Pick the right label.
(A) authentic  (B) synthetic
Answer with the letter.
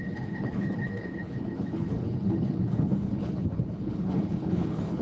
B